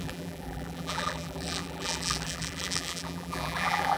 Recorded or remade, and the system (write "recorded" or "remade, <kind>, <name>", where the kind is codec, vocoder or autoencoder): remade, vocoder, BigVGAN v2